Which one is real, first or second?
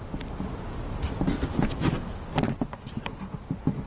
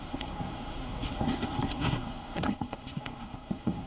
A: first